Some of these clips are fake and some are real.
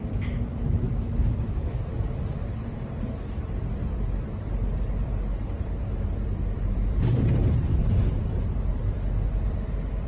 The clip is fake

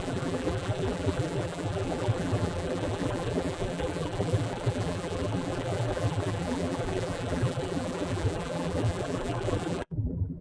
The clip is fake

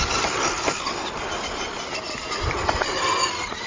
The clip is real